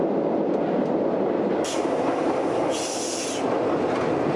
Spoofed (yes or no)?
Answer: no